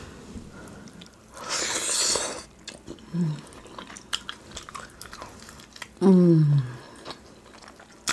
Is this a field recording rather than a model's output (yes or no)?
yes